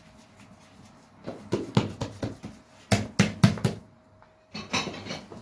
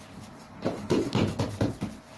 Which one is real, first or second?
first